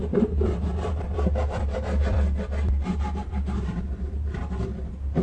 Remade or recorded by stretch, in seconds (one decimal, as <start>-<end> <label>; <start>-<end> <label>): 0.0-2.1 remade; 2.1-3.2 recorded; 3.2-4.4 remade; 4.4-5.2 recorded